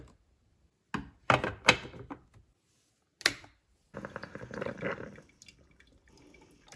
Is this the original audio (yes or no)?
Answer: yes